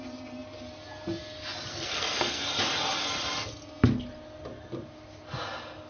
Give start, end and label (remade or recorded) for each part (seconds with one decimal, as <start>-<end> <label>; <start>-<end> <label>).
0.0-1.7 recorded; 1.7-2.5 remade; 2.5-5.9 recorded